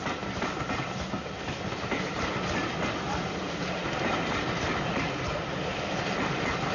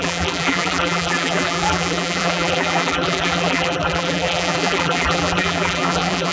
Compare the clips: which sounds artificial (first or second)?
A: second